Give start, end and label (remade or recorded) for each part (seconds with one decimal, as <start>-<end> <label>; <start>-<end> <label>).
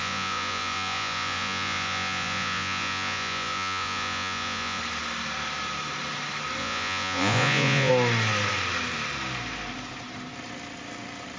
0.0-4.8 remade; 4.8-6.6 recorded; 6.6-7.9 remade; 7.9-11.4 recorded